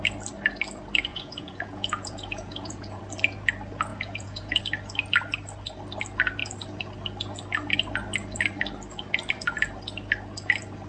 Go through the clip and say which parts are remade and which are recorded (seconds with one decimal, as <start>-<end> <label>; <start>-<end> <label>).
0.0-1.1 recorded; 1.1-3.0 remade; 3.0-3.9 recorded; 3.9-4.6 remade; 4.6-10.9 recorded